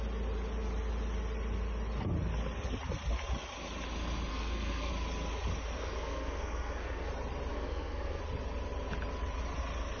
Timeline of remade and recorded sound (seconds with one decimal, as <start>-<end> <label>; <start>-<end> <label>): 0.0-4.3 recorded; 4.3-4.9 remade; 4.9-5.8 recorded; 5.8-7.1 remade; 7.1-7.5 recorded; 7.5-8.2 remade; 8.2-10.0 recorded